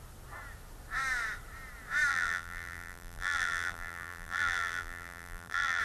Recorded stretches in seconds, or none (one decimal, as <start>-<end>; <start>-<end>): 0.0-2.1

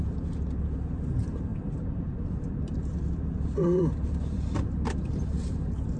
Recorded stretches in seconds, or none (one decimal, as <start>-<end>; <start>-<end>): 0.0-1.5; 5.1-6.0

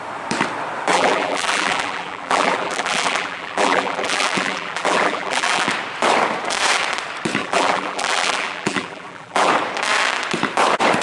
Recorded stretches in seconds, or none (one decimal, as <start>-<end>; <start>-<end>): 0.0-0.9; 5.7-7.4; 9.5-11.0

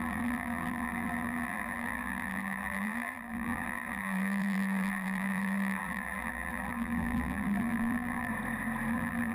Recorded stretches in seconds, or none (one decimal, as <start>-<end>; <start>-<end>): 8.3-8.9

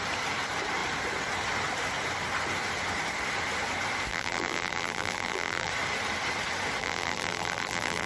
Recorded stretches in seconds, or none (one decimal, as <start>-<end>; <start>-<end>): 0.0-4.1; 5.7-6.8

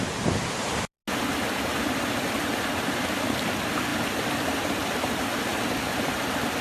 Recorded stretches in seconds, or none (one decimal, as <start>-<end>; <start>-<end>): 0.0-3.9; 5.2-6.6